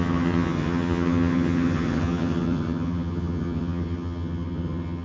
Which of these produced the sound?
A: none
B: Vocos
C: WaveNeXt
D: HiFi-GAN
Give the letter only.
D